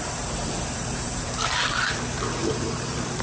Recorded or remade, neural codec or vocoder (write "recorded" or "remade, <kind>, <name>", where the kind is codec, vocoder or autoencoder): remade, vocoder, BigVGAN v2